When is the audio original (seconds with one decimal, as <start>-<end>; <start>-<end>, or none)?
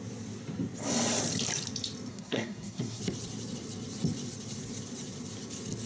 0.0-2.1; 3.0-5.9